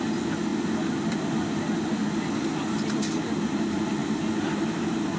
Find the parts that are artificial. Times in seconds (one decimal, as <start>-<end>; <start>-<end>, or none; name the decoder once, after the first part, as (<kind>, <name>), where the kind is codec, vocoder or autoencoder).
none

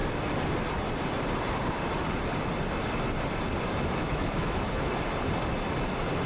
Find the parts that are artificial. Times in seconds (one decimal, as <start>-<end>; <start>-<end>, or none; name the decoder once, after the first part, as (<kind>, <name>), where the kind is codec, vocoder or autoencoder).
4.0-4.9 (autoencoder, DAC-VAE)

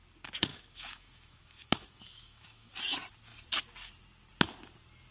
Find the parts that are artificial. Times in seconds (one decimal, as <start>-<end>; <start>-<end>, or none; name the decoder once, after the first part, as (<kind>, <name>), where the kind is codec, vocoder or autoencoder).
0.5-2.7 (autoencoder, DAC-VAE)

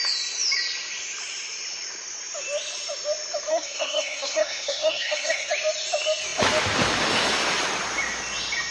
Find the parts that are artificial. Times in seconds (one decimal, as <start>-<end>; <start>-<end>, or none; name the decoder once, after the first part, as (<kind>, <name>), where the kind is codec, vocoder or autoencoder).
3.5-5.5 (codec, SNAC)

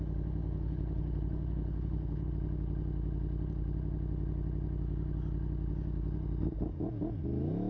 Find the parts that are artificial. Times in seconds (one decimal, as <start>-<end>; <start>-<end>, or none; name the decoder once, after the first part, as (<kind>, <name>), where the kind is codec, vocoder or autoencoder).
0.4-2.3 (codec, HILCodec)

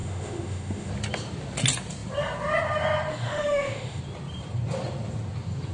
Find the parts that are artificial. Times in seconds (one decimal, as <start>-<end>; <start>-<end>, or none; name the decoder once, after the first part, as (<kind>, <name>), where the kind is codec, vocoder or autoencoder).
0.0-0.9 (autoencoder, DAC-VAE); 3.1-4.0

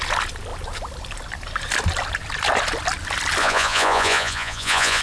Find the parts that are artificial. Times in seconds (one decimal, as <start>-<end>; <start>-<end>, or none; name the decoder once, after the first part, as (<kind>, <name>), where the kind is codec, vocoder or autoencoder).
3.4-5.0 (vocoder, Vocos)